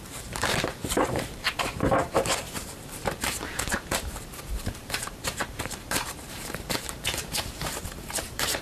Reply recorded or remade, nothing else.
remade